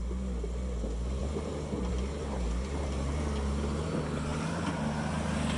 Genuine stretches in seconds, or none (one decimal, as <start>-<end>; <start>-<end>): 0.0-5.6